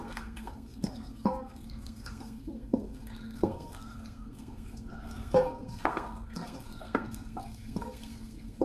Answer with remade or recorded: remade